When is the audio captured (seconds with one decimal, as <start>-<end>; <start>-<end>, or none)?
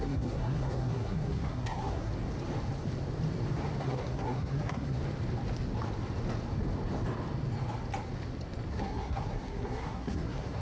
2.1-3.8; 5.0-8.7